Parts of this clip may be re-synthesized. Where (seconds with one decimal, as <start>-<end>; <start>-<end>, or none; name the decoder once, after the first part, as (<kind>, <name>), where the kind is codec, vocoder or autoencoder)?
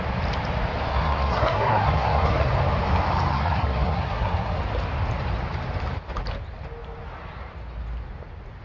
0.9-2.5 (codec, SNAC); 3.3-4.6